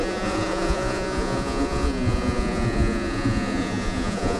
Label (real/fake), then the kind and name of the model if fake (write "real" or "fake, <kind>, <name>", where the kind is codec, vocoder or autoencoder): fake, vocoder, Vocos